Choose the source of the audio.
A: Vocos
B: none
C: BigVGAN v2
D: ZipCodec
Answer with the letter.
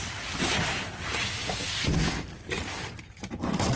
B